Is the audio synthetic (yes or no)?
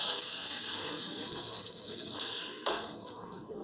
yes